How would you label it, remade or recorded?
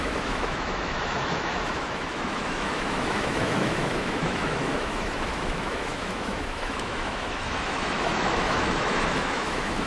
remade